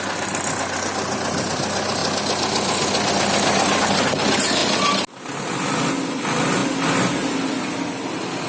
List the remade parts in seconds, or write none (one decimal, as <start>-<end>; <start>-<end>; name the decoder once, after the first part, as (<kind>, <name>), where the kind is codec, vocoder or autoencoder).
6.6-7.6 (vocoder, BigVGAN v2)